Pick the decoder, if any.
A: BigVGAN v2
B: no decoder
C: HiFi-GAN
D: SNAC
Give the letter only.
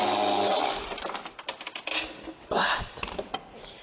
B